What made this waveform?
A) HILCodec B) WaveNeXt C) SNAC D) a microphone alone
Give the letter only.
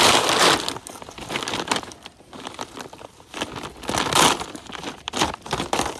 D